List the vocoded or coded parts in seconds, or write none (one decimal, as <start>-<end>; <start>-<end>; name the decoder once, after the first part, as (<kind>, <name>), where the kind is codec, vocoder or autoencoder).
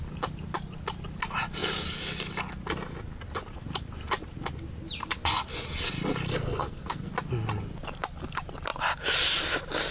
6.3-7.1 (codec, SNAC)